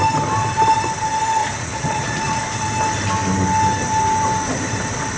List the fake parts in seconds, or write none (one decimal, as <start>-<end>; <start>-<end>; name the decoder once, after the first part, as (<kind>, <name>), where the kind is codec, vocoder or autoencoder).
1.4-2.4 (vocoder, Vocos)